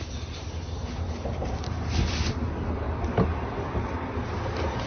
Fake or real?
real